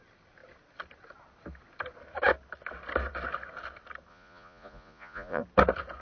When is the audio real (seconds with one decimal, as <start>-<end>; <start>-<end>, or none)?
0.0-4.1; 5.4-6.0

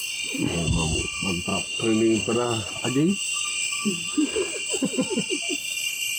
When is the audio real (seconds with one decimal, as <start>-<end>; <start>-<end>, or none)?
0.0-6.2

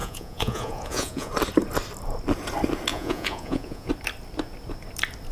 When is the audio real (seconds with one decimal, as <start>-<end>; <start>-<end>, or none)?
1.3-2.9; 3.9-5.3

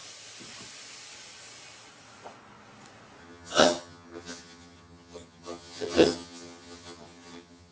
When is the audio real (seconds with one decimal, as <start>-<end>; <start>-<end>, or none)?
0.0-3.2